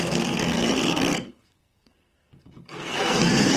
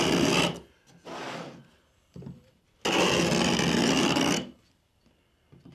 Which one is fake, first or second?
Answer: first